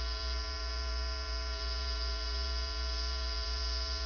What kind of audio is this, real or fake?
fake